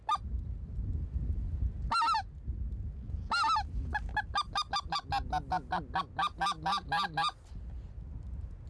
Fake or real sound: real